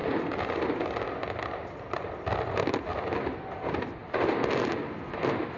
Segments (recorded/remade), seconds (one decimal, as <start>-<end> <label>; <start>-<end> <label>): 0.0-5.6 recorded